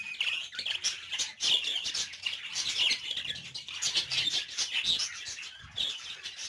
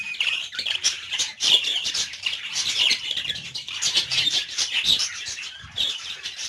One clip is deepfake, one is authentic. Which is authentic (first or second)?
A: first